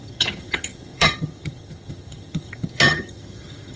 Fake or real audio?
fake